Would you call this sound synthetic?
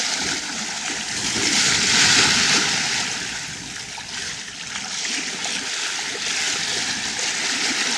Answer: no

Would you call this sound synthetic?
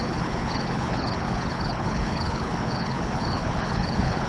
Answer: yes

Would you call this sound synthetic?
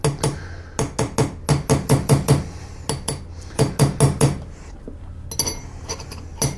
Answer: no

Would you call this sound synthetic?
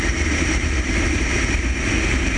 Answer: no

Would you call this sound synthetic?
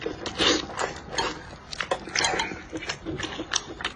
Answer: no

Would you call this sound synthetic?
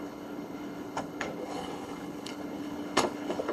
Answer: yes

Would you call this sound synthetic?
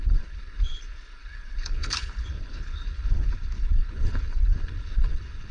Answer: yes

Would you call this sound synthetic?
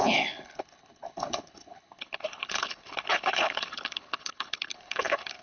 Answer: yes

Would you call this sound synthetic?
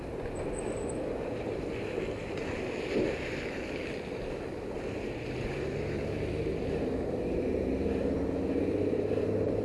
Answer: no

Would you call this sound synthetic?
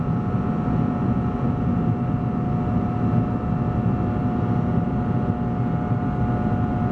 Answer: no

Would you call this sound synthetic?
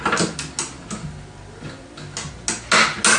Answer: no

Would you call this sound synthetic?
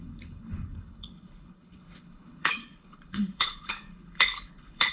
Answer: yes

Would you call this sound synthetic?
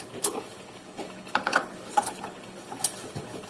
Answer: yes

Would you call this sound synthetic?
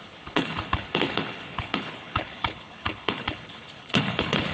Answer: yes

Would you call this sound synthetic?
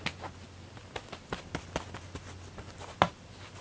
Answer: no